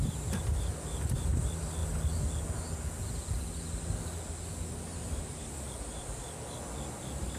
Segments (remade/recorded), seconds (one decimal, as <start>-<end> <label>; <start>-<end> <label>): 0.0-1.8 remade; 1.8-4.7 recorded; 4.7-6.2 remade; 6.2-7.0 recorded; 7.0-7.4 remade